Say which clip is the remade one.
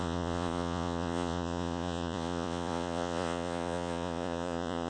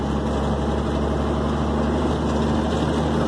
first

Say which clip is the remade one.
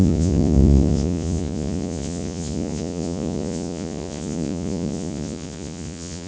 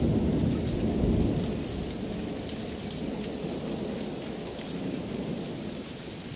first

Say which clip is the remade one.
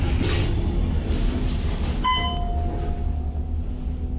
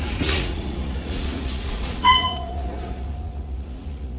second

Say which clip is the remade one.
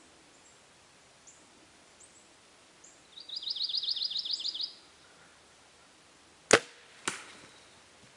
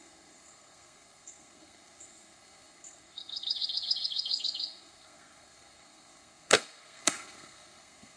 second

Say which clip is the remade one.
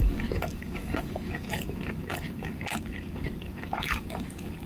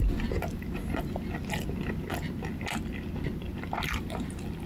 first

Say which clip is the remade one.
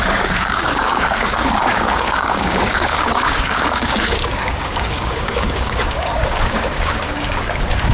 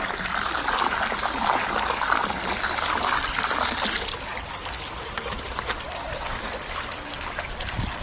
first